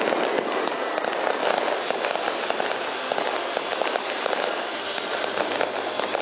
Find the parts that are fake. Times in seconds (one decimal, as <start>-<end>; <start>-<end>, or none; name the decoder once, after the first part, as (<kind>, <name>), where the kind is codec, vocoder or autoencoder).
none